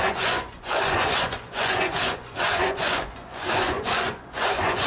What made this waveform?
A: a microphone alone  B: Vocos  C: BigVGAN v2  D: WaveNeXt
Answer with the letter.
B